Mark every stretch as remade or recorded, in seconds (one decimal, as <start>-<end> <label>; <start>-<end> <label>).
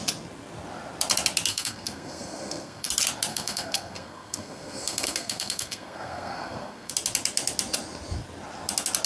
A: 0.0-1.5 recorded; 1.5-2.9 remade; 2.9-3.3 recorded; 3.3-6.9 remade; 6.9-9.1 recorded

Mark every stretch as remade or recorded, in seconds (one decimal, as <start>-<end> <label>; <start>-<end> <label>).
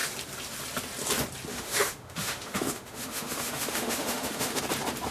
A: 0.0-1.5 recorded; 1.5-4.6 remade; 4.6-5.1 recorded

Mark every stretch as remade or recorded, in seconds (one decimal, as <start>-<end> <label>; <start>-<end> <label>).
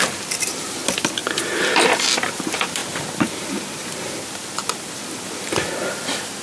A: 0.0-6.4 recorded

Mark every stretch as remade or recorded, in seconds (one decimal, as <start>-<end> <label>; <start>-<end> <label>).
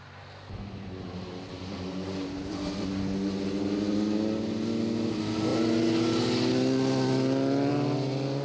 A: 0.0-8.4 recorded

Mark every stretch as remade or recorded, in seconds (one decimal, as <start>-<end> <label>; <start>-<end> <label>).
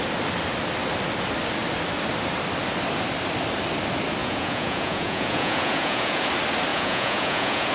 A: 0.0-4.2 recorded; 4.2-6.3 remade; 6.3-6.7 recorded; 6.7-7.7 remade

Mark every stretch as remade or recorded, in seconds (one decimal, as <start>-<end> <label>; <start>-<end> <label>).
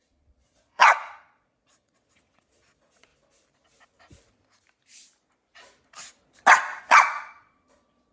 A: 0.0-3.1 remade; 3.1-6.8 recorded; 6.8-8.1 remade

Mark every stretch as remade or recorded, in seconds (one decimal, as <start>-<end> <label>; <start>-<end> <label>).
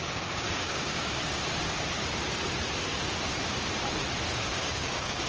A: 0.0-1.2 remade; 1.2-4.4 recorded; 4.4-5.3 remade